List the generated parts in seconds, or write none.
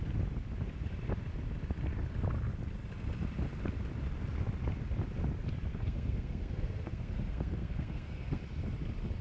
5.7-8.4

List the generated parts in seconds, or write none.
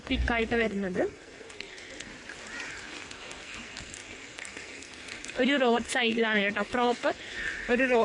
0.0-2.1; 2.7-8.0